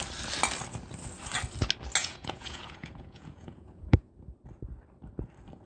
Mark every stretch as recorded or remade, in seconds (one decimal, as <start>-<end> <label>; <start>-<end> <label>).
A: 0.0-2.0 recorded; 2.0-4.1 remade; 4.1-5.7 recorded